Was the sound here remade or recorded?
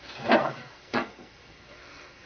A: remade